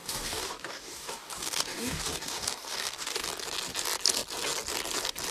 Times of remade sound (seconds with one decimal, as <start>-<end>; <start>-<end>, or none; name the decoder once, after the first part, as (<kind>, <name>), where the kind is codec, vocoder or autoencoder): 0.0-3.2 (codec, DAC)